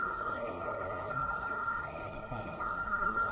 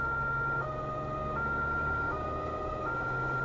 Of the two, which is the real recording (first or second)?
second